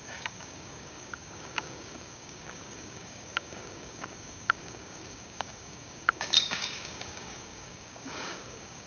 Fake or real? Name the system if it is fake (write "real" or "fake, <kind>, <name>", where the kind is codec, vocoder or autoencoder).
fake, codec, DAC